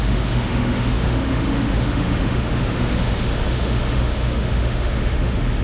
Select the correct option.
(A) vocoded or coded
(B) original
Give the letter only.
A